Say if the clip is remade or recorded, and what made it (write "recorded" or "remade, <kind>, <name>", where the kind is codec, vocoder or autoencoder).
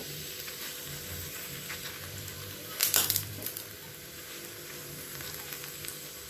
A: remade, vocoder, BigVGAN v2